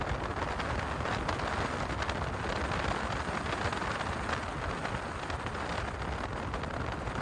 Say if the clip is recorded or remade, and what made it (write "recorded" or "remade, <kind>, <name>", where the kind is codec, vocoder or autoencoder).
recorded